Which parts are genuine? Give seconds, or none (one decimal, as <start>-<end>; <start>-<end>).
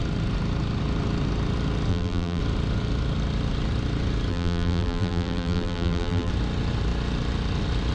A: 0.0-1.9; 2.4-4.3; 6.3-7.9